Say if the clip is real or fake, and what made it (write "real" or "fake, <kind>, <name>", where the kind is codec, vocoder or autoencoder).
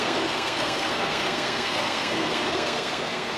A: fake, codec, SNAC